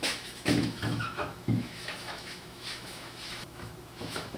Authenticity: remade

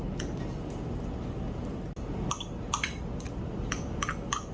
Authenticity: recorded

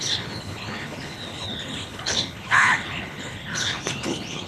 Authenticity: remade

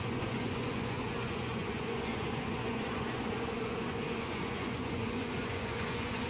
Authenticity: remade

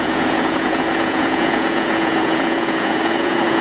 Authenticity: remade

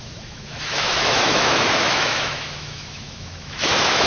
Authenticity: remade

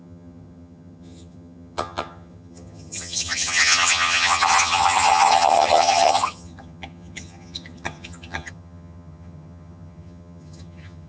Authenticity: remade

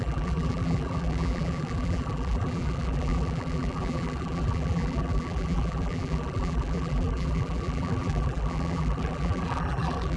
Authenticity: remade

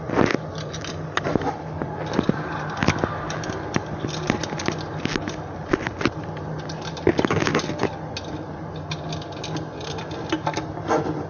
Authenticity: recorded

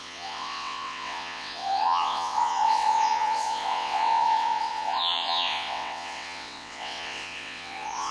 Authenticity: remade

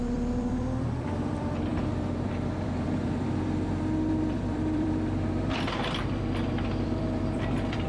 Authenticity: remade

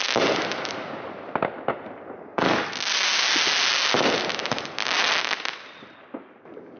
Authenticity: recorded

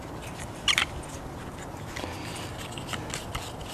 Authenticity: recorded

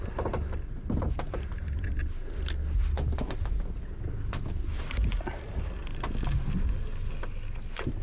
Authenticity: recorded